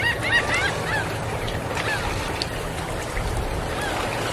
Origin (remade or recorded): recorded